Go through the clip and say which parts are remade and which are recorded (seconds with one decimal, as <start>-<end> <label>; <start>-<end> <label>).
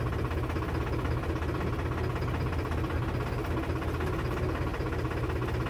0.0-5.7 recorded